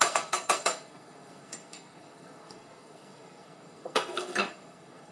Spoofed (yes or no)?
yes